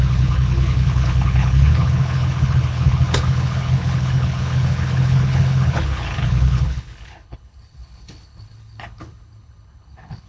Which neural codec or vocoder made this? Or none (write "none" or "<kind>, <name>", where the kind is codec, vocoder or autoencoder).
codec, HILCodec